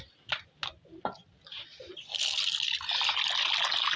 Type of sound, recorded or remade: recorded